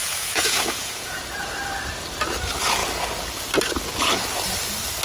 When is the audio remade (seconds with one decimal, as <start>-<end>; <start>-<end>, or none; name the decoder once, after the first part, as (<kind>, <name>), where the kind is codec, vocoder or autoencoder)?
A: 0.0-1.2 (vocoder, Vocos)